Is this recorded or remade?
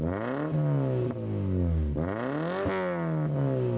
recorded